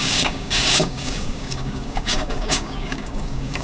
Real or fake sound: fake